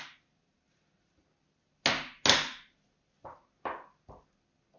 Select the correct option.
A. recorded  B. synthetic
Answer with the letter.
A